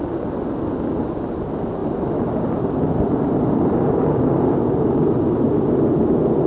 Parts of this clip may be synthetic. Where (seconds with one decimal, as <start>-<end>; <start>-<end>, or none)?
none